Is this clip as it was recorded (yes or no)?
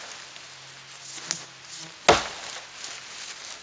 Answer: yes